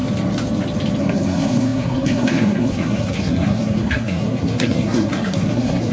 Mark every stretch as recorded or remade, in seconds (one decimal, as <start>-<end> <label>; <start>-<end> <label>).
0.0-1.0 recorded; 1.0-5.9 remade